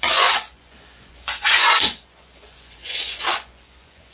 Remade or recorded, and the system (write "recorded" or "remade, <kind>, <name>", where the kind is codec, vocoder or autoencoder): remade, vocoder, Vocos